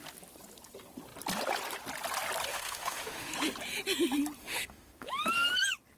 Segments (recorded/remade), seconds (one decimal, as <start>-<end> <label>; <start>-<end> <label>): 0.0-2.5 recorded; 2.5-3.3 remade; 3.3-4.4 recorded; 4.4-5.1 remade; 5.1-6.0 recorded